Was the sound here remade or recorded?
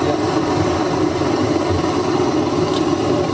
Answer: recorded